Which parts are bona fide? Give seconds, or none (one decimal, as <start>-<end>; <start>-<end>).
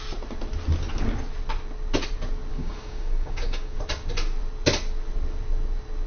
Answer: 0.0-2.5; 3.8-6.1